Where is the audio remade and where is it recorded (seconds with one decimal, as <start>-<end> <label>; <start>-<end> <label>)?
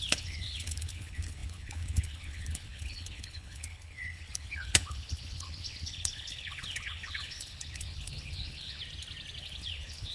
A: 0.0-8.8 remade; 8.8-9.4 recorded; 9.4-10.1 remade